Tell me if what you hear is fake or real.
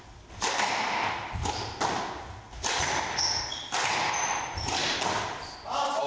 real